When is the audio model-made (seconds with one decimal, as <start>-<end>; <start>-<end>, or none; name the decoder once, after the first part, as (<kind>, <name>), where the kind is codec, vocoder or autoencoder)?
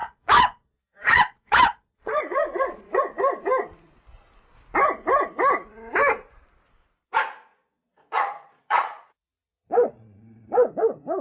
0.0-3.0 (vocoder, Vocos); 7.5-11.2